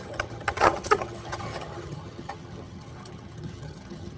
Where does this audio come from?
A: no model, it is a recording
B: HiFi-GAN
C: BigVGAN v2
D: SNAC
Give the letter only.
B